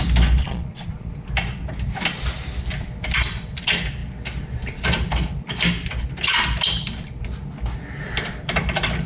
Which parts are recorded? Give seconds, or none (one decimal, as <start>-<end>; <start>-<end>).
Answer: 0.0-0.4; 1.1-9.1